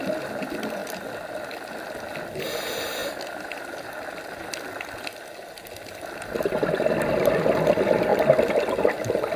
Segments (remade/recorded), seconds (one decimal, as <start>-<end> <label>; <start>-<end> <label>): 0.0-9.4 recorded